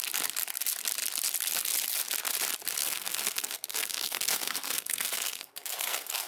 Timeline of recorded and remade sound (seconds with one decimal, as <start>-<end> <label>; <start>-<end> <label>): 0.0-2.8 recorded; 2.8-6.3 remade